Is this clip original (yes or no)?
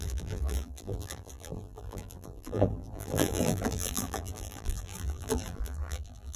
no